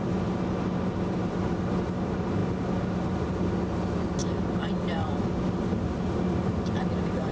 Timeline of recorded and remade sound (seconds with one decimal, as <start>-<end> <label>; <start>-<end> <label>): 0.0-7.3 recorded